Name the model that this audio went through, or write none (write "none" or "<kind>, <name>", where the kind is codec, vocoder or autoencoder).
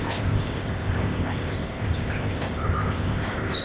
codec, ZipCodec